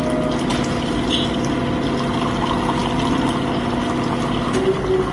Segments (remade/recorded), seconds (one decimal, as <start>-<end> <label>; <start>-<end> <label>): 0.0-5.1 recorded